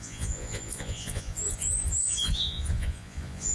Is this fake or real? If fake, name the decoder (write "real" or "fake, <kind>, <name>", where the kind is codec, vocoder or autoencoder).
fake, vocoder, Vocos